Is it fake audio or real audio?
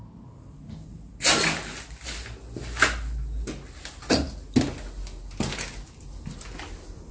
real